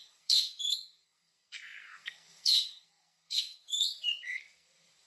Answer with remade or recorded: remade